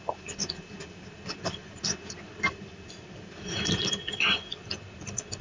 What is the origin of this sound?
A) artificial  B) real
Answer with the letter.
B